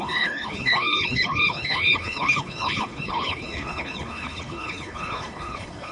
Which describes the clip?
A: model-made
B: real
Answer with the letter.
A